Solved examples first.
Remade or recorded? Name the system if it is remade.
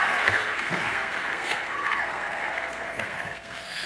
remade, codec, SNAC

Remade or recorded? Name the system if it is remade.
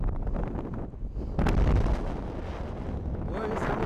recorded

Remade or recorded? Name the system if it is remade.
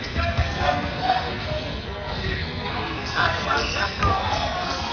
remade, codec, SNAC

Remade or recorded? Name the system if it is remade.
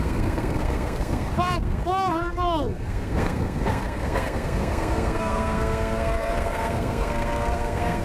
remade, codec, SNAC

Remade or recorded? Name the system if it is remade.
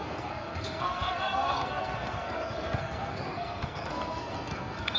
remade, codec, SNAC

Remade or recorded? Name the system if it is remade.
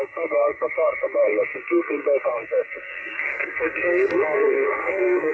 remade, codec, SNAC